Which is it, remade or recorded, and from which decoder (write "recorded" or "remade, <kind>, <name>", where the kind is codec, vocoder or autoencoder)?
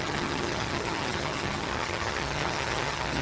remade, vocoder, HiFi-GAN